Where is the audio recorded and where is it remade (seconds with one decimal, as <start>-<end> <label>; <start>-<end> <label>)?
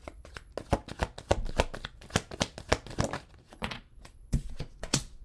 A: 0.0-0.5 remade; 0.5-3.5 recorded; 3.5-5.2 remade